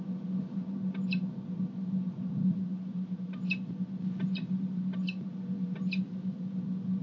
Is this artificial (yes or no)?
no